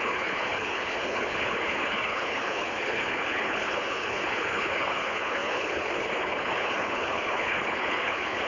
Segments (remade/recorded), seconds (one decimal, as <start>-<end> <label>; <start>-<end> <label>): 0.0-8.5 remade